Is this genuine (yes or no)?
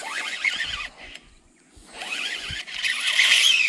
no